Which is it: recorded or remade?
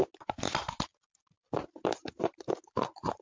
recorded